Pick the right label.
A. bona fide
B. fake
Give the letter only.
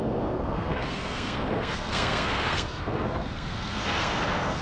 B